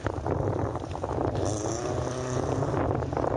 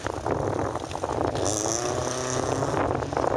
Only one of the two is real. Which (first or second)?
second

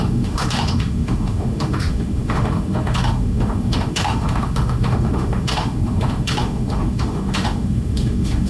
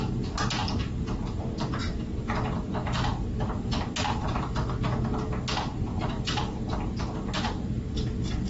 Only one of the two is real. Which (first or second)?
second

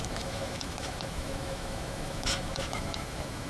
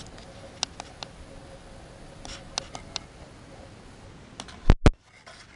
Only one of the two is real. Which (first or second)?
second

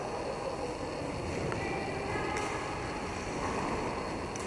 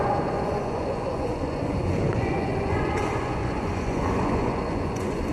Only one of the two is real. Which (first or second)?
first